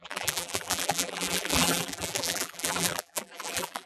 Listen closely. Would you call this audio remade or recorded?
remade